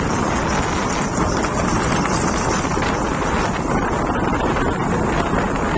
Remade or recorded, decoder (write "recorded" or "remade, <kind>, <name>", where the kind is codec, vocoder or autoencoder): recorded